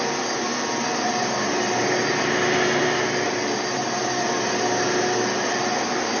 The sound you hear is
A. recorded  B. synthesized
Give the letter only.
A